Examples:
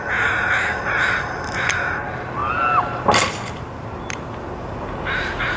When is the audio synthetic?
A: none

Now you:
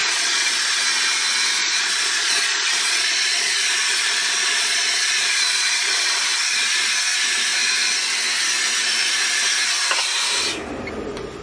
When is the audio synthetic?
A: 0.0-0.6 (vocoder, Vocos); 1.6-6.2

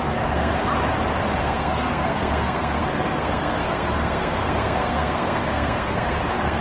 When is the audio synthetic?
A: 0.0-0.5 (codec, SNAC); 1.4-6.6

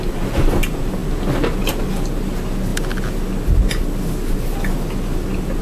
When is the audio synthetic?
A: none

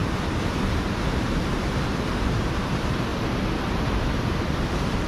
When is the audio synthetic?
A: 0.8-3.1 (vocoder, BigVGAN v2); 3.9-5.1

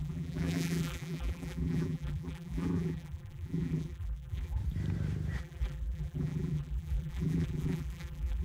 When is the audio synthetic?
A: 0.0-4.6 (vocoder, BigVGAN v2); 5.4-8.4

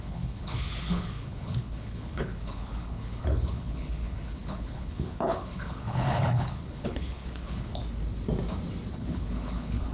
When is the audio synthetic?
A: 0.0-7.8 (codec, HILCodec); 8.9-9.9

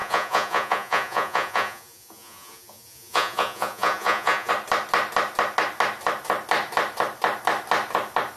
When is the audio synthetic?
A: 0.0-4.5 (vocoder, Vocos)